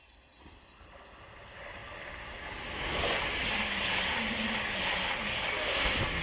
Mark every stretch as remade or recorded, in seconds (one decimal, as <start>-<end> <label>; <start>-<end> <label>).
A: 0.0-6.2 recorded